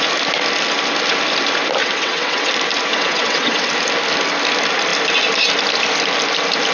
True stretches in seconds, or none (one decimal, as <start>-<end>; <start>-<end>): 0.0-1.8; 2.5-2.9; 3.7-6.7